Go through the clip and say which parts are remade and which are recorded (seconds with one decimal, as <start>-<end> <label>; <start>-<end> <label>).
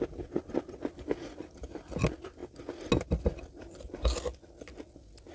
0.0-5.3 recorded